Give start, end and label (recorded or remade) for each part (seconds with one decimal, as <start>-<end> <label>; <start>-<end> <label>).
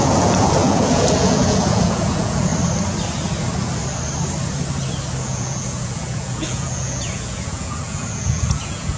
0.0-2.5 remade; 2.5-5.2 recorded; 5.2-9.0 remade